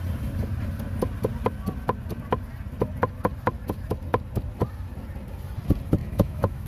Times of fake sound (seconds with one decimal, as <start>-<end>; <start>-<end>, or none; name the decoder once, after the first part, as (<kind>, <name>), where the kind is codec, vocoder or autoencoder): 6.0-6.7 (autoencoder, DAC-VAE)